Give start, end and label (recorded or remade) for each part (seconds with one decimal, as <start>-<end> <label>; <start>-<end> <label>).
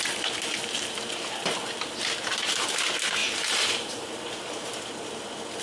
0.0-3.2 recorded; 3.2-4.1 remade; 4.1-5.6 recorded